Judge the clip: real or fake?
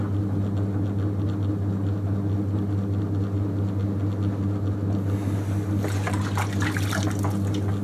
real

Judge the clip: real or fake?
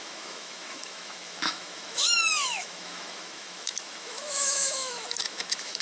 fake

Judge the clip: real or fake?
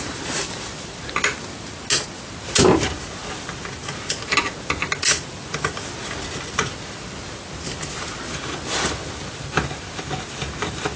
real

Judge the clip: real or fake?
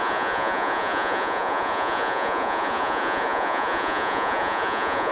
fake